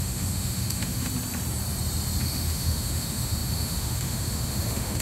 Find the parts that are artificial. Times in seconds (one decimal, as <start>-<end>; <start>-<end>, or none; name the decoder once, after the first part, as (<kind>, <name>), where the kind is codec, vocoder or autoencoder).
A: 0.0-1.1 (autoencoder, DAC-VAE); 2.2-5.0